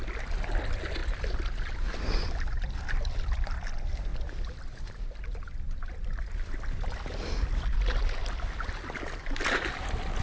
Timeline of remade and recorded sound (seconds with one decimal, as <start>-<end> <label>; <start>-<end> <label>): 0.0-10.2 recorded

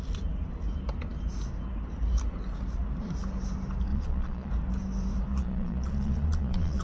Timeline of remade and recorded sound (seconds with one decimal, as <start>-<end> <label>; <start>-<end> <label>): 0.0-3.9 recorded; 3.9-4.5 remade; 4.5-5.3 recorded; 5.3-6.8 remade

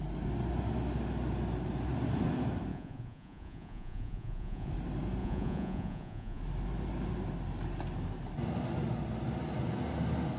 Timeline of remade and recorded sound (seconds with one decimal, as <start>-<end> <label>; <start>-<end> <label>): 0.0-2.7 recorded; 2.7-4.7 remade; 4.7-5.2 recorded; 5.2-6.4 remade; 6.4-10.4 recorded

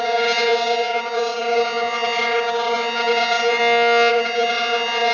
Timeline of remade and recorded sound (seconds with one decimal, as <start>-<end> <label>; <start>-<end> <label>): 0.0-3.6 remade; 3.6-4.1 recorded; 4.1-5.1 remade

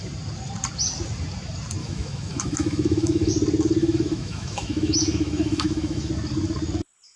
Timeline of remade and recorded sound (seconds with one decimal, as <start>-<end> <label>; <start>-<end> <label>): 0.0-1.8 recorded; 1.8-3.3 remade; 3.3-3.8 recorded; 3.8-6.1 remade; 6.1-7.2 recorded

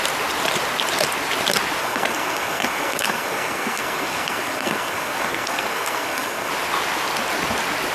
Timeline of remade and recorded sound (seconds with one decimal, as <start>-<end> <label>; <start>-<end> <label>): 0.0-1.8 recorded; 1.8-6.5 remade; 6.5-7.9 recorded

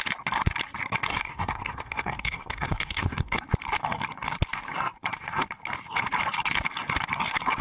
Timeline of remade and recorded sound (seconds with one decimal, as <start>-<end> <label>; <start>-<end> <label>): 0.0-1.1 recorded; 1.1-3.4 remade; 3.4-7.6 recorded

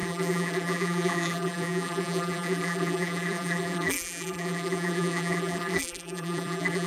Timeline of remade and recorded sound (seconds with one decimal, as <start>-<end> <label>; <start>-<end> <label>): 0.0-6.9 remade